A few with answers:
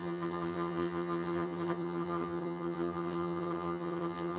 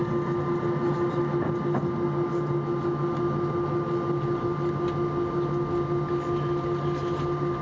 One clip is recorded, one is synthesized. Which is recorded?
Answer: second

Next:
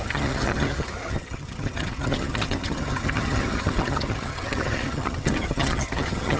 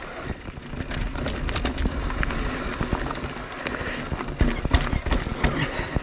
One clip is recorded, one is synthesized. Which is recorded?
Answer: second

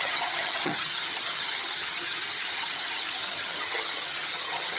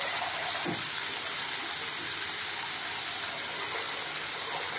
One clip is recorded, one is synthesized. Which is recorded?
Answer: second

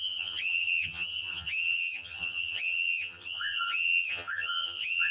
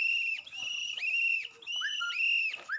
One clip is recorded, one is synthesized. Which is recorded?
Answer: second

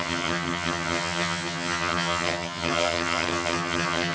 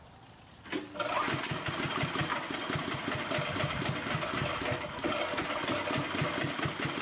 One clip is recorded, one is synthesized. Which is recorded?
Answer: second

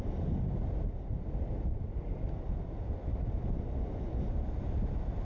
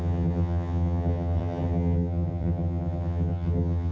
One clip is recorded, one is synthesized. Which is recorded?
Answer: first